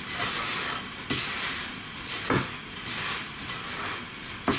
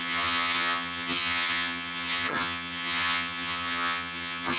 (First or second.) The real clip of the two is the first